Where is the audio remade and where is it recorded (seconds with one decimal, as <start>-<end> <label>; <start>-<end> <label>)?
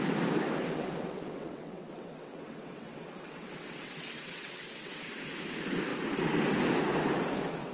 0.0-0.6 recorded; 0.6-5.2 remade; 5.2-7.7 recorded